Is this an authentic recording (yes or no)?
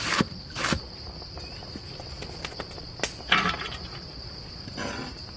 yes